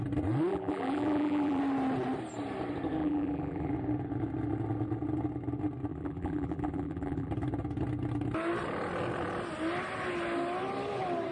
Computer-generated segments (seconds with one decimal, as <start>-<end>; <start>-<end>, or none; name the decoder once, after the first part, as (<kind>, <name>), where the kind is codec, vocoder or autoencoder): 0.5-1.6 (vocoder, BigVGAN v2); 3.0-3.7; 5.9-7.3